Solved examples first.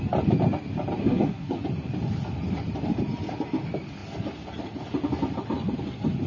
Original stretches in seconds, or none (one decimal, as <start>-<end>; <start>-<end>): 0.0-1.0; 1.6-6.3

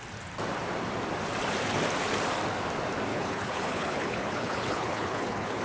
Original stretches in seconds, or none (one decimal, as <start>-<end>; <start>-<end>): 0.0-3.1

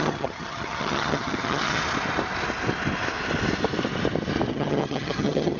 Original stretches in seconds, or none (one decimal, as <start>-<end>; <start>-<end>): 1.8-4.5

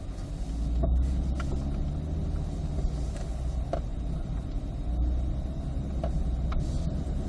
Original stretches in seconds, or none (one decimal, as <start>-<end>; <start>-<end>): 0.0-7.3